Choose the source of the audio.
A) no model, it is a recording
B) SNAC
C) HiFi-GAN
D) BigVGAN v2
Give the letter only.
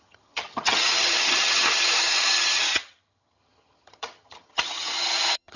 C